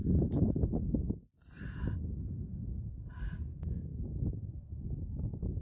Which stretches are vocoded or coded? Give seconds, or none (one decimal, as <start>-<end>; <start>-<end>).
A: 0.0-0.7; 2.5-3.1